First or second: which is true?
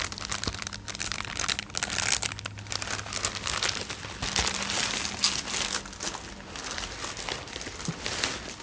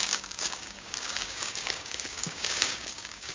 first